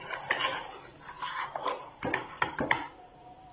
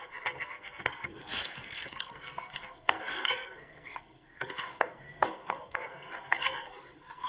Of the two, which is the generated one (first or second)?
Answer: second